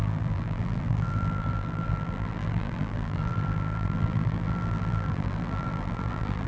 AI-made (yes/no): yes